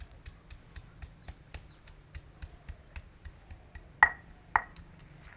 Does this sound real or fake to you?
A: real